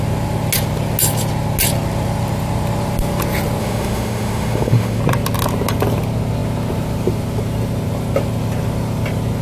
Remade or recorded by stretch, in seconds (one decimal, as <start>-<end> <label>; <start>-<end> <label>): 0.0-3.6 recorded; 3.6-5.0 remade; 5.0-9.4 recorded